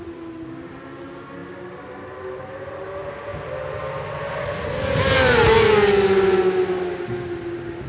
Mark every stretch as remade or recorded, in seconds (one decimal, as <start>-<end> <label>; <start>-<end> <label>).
0.0-7.9 recorded

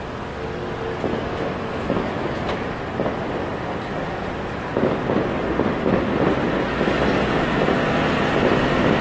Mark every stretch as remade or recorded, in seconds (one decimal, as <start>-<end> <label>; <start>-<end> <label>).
0.0-1.1 recorded; 1.1-2.8 remade; 2.8-9.0 recorded

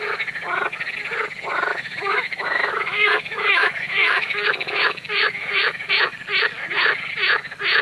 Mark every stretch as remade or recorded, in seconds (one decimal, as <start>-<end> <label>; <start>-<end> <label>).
0.0-1.7 recorded; 1.7-5.9 remade; 5.9-7.8 recorded

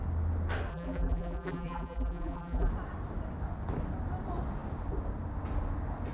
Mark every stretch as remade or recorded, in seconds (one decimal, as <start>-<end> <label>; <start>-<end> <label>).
0.0-0.7 recorded; 0.7-2.7 remade; 2.7-6.1 recorded

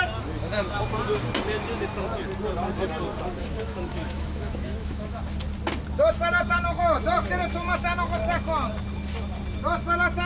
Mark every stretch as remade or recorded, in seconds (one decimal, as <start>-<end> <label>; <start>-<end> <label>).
0.0-3.4 recorded; 3.4-5.2 remade; 5.2-10.3 recorded

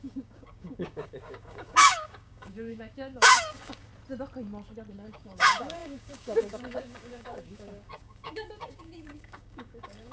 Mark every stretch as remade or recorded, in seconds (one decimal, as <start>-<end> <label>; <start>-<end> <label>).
0.0-3.9 remade; 3.9-4.9 recorded; 4.9-10.1 remade

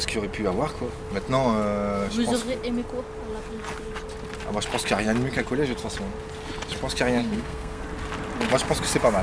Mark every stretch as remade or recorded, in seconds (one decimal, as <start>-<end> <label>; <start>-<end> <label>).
0.0-7.2 recorded; 7.2-7.8 remade; 7.8-9.2 recorded

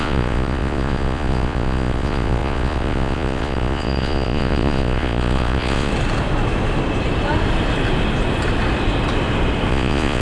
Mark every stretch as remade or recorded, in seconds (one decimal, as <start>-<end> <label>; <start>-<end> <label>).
0.0-5.9 remade; 5.9-9.7 recorded; 9.7-10.2 remade